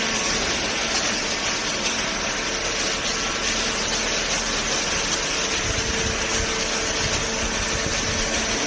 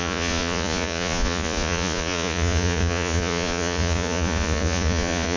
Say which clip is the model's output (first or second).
second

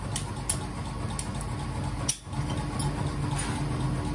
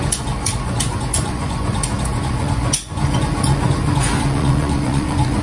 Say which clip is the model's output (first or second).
second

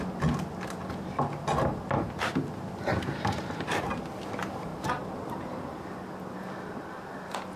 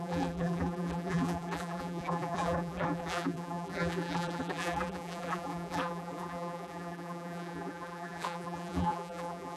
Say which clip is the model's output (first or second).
second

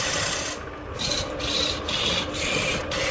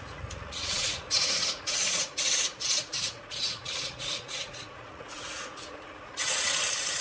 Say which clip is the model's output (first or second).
second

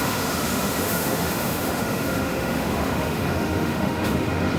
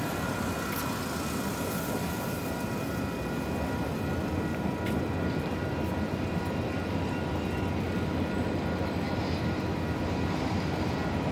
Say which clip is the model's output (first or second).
first